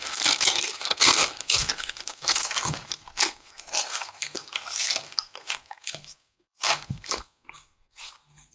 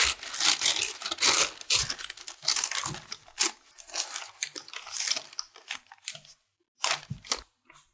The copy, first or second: first